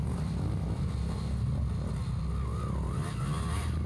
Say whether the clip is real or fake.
real